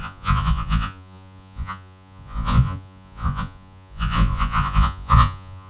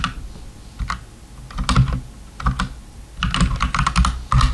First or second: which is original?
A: second